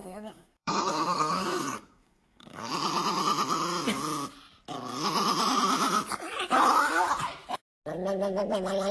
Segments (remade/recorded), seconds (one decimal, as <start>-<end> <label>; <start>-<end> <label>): 0.0-2.7 remade; 2.7-8.9 recorded